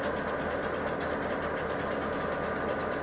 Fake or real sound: real